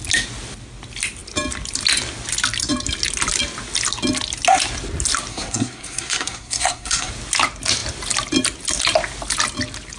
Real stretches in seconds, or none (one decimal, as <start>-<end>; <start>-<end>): 0.0-5.3; 7.1-10.0